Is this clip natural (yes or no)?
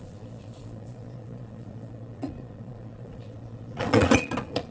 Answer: no